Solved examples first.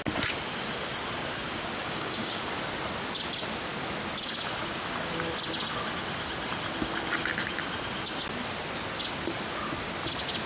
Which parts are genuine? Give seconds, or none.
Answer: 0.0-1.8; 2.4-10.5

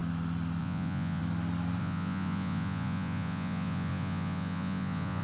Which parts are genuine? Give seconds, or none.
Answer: 0.0-0.6; 1.2-1.8